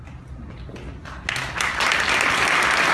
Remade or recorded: recorded